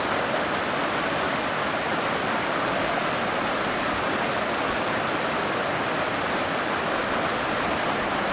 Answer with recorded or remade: recorded